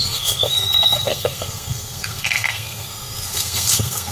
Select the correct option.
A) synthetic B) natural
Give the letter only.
A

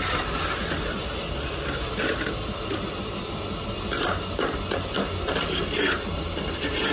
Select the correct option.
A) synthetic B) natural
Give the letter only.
B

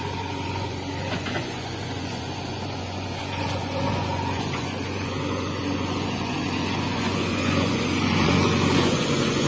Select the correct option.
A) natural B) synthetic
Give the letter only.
B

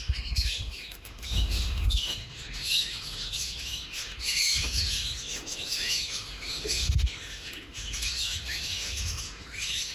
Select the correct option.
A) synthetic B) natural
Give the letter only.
A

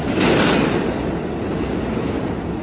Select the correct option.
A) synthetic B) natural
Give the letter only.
B